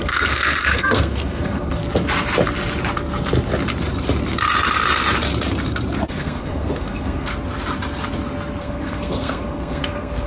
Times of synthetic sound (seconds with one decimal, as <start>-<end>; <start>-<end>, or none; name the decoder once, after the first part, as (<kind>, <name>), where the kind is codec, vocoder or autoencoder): 0.0-1.8 (codec, SNAC); 6.1-7.3; 8.6-10.3